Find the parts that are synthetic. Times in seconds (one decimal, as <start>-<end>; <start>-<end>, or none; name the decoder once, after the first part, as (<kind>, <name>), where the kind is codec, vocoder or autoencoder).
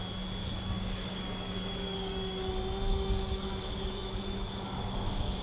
0.4-2.5 (codec, DAC); 2.9-5.4